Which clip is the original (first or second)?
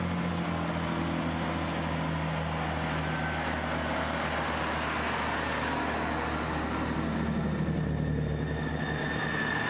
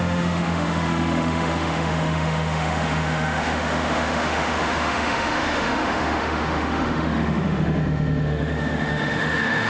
first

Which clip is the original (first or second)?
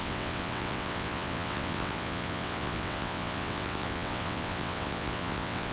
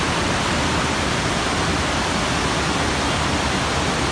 second